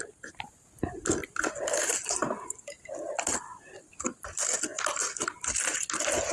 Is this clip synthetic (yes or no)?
no